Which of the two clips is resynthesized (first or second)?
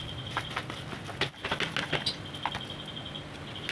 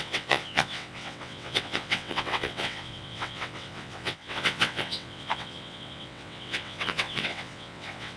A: second